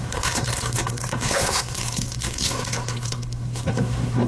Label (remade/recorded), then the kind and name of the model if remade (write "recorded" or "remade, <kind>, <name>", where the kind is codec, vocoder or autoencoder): remade, codec, SNAC